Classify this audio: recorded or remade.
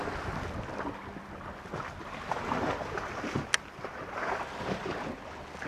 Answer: recorded